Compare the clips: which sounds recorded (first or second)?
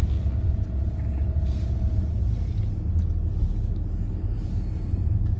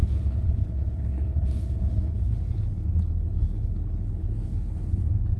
first